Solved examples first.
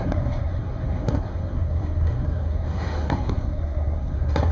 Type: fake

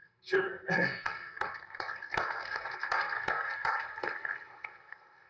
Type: fake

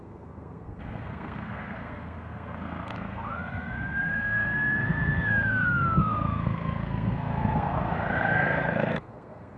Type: fake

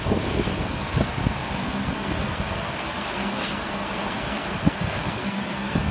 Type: fake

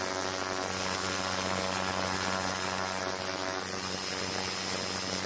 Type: real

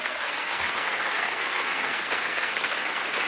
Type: fake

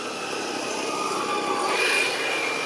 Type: real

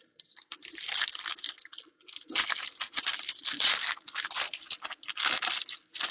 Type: real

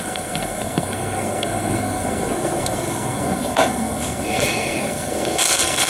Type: fake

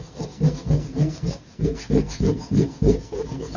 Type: fake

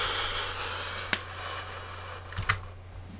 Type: real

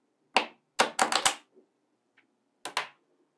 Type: real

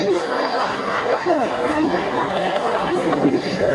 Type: fake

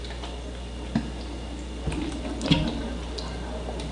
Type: real